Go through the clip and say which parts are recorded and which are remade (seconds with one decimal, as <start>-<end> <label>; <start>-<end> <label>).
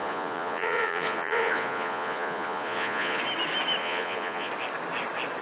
0.0-3.2 remade; 3.2-3.8 recorded; 3.8-4.5 remade; 4.5-5.4 recorded